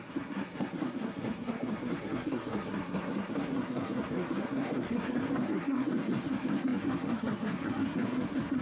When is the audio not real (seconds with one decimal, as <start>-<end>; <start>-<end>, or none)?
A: 0.0-8.6